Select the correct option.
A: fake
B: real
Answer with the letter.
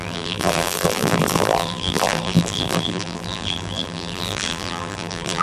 A